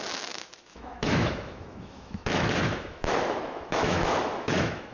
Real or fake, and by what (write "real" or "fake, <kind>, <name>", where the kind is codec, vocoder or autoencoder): fake, autoencoder, DAC-VAE